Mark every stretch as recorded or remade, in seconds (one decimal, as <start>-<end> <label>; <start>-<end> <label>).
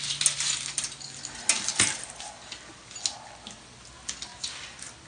0.0-5.1 recorded